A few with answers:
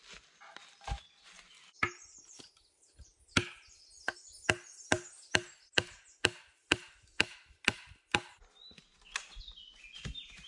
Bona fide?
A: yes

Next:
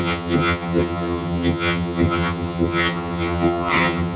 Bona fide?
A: no